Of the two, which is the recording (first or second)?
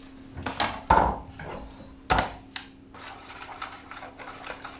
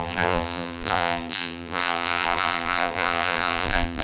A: first